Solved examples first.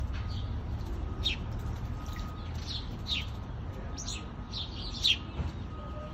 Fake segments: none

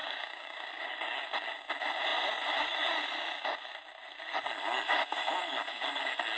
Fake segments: 0.0-0.8